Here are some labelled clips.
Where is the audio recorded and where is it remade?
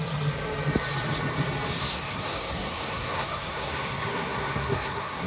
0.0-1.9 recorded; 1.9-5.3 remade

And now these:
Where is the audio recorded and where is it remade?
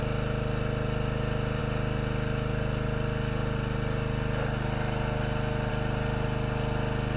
0.0-7.2 recorded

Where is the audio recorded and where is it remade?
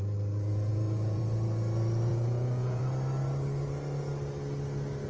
0.0-0.7 recorded; 0.7-1.2 remade; 1.2-2.1 recorded; 2.1-2.8 remade; 2.8-5.1 recorded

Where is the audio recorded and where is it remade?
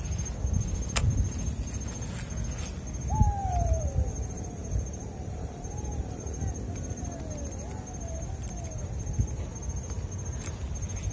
0.0-3.4 recorded; 3.4-7.2 remade; 7.2-11.1 recorded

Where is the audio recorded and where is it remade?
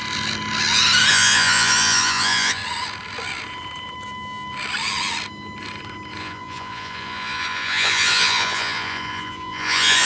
0.0-1.1 recorded; 1.1-2.6 remade; 2.6-6.2 recorded; 6.2-10.1 remade